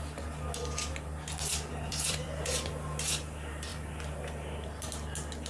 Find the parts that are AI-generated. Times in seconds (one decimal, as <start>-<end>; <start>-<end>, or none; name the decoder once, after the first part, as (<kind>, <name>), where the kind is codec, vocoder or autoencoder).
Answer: 1.9-2.5 (vocoder, BigVGAN v2)